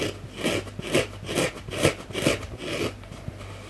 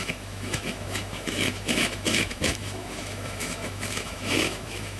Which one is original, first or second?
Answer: first